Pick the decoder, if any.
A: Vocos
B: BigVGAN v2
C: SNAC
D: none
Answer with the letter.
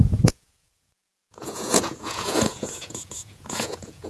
A